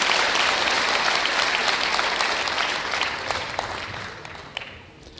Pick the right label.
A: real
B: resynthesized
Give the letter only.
A